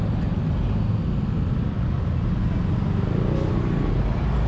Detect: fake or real real